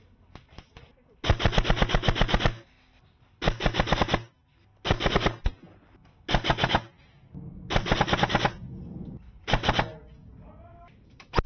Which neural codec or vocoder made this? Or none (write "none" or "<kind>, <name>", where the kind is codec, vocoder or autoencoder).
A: none